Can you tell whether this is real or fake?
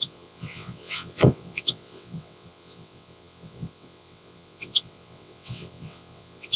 fake